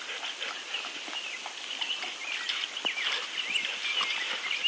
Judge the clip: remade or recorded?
recorded